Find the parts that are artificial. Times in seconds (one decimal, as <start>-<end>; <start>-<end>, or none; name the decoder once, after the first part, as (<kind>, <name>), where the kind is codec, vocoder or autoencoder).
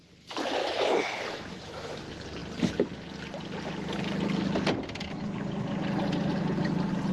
0.6-2.0 (autoencoder, DAC-VAE)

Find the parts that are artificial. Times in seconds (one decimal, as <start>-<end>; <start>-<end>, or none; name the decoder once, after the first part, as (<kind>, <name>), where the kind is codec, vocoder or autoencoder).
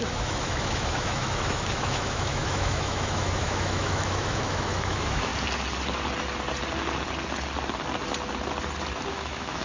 0.0-5.3 (autoencoder, DAC-VAE); 9.1-9.6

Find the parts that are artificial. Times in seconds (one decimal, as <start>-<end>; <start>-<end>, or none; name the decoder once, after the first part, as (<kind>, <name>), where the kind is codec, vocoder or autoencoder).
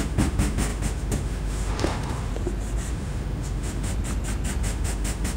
0.0-2.3 (autoencoder, DAC-VAE); 2.9-3.9; 4.6-5.4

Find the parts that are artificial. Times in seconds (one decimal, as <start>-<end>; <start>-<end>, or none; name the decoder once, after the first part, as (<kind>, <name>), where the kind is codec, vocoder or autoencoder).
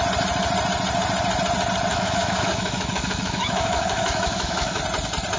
1.9-4.8 (autoencoder, DAC-VAE)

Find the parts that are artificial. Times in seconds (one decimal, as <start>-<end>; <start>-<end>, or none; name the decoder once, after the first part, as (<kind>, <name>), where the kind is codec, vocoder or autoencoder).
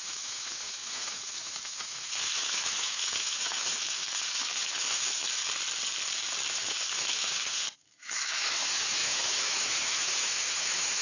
0.0-5.4 (autoencoder, DAC-VAE); 6.5-11.0